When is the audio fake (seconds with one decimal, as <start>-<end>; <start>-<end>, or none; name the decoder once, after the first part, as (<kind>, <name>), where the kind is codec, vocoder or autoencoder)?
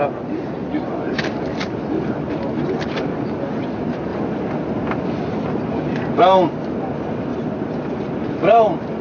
none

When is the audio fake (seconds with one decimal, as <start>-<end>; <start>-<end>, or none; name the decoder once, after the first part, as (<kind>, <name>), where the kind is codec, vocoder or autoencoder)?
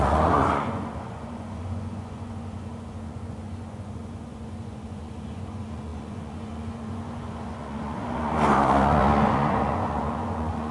0.0-10.7 (vocoder, Vocos)